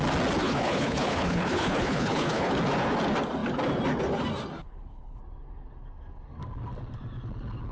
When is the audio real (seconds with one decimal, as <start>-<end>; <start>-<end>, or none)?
0.0-0.4; 2.5-4.6; 5.2-7.7